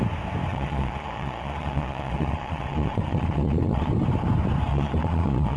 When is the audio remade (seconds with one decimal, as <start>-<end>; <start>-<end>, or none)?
0.5-3.9; 4.7-5.6